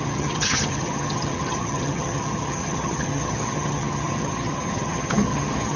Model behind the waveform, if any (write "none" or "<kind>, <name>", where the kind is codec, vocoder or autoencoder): vocoder, HiFi-GAN